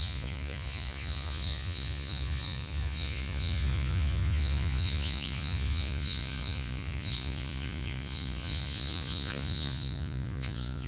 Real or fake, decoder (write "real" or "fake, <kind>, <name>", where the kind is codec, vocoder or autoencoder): fake, vocoder, Vocos